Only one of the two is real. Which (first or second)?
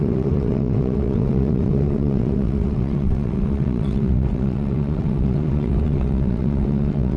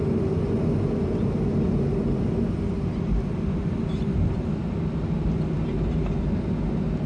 second